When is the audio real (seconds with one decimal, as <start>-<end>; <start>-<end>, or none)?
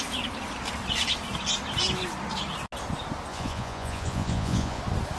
0.0-3.3; 4.8-5.2